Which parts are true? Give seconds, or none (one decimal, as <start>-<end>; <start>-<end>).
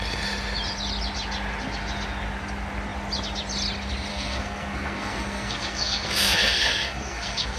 0.0-4.1